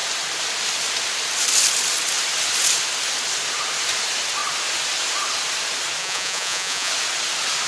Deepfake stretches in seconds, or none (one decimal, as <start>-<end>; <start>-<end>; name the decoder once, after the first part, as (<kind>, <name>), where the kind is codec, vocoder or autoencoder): 6.0-6.9 (vocoder, Vocos)